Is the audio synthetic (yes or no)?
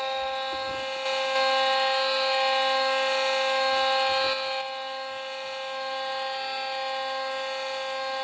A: no